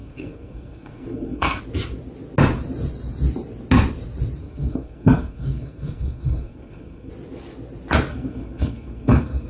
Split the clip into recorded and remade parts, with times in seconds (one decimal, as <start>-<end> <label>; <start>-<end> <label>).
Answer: 0.0-1.6 remade; 1.6-4.4 recorded; 4.4-7.1 remade; 7.1-8.1 recorded; 8.1-9.5 remade